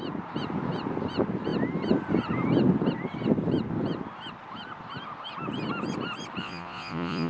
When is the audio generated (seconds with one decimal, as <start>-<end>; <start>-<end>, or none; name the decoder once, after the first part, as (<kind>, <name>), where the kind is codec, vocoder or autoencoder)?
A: 6.4-7.3 (vocoder, Vocos)